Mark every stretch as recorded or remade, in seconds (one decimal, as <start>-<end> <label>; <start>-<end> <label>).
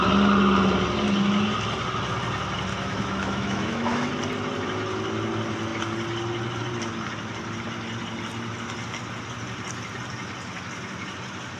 0.0-2.7 recorded; 2.7-4.1 remade; 4.1-11.6 recorded